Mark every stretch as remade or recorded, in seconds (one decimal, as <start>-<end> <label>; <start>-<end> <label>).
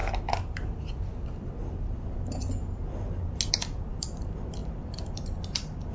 0.0-3.5 recorded; 3.5-5.9 remade